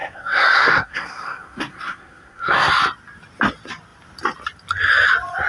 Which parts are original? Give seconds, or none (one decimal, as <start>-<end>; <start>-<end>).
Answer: 2.7-5.5